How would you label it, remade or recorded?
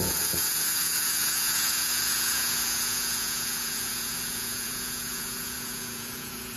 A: remade